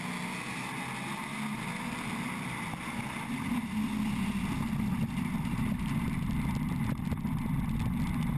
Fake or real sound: real